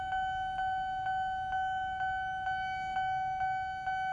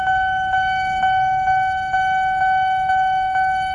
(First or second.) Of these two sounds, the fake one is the second